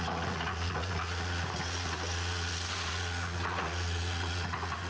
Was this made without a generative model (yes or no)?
no